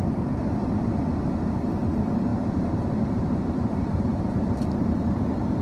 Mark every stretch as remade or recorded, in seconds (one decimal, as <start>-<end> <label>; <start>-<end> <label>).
0.0-2.3 recorded; 2.3-5.6 remade